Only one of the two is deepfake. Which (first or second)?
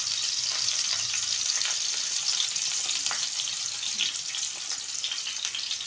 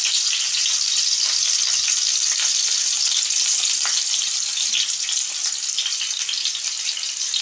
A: first